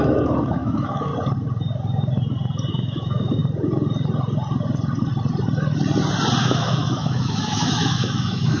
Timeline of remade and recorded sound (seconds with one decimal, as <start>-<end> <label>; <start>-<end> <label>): 0.0-1.1 remade; 1.1-2.7 recorded; 2.7-3.4 remade; 3.4-6.4 recorded; 6.4-8.6 remade